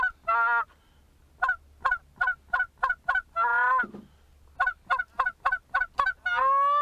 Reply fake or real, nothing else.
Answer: real